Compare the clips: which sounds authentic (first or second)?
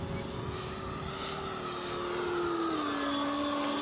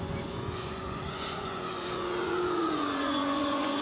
first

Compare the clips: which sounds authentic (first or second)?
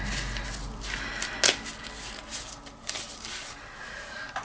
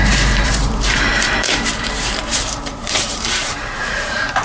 first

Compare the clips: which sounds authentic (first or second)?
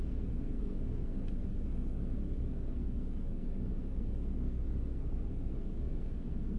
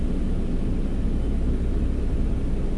second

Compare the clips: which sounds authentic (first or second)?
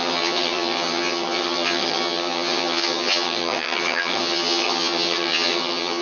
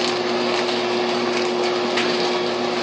second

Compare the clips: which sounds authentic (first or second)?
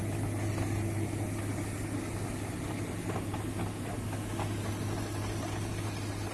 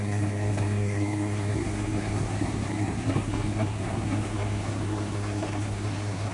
first